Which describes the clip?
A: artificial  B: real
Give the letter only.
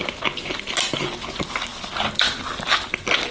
B